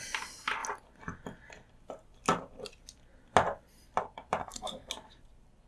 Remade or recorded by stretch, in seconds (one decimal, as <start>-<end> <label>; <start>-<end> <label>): 0.0-4.4 recorded; 4.4-4.9 remade; 4.9-5.7 recorded